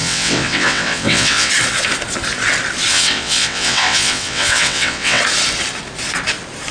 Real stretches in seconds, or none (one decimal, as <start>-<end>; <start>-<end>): 1.5-2.9; 5.2-6.7